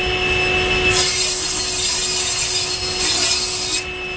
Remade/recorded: recorded